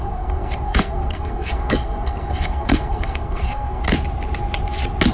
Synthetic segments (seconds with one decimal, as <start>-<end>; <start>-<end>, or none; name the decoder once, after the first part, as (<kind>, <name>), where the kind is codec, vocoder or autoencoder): 0.0-3.8 (codec, SNAC)